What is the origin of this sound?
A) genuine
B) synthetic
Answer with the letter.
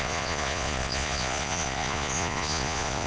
B